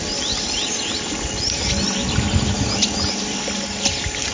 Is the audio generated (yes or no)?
no